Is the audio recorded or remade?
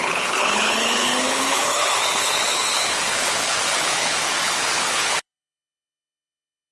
remade